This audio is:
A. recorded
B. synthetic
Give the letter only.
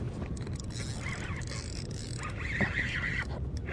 A